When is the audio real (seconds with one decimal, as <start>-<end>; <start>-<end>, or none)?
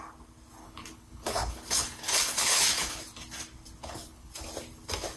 0.0-0.6; 3.0-3.8; 4.3-5.2